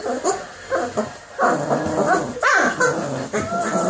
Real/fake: real